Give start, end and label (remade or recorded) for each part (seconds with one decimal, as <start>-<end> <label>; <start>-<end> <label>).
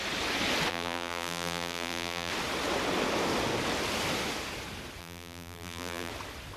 0.0-0.7 recorded; 0.7-2.3 remade; 2.3-5.0 recorded; 5.0-6.1 remade; 6.1-6.6 recorded